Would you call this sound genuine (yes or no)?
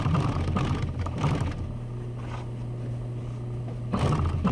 yes